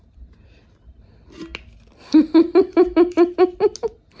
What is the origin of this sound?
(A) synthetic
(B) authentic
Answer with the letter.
B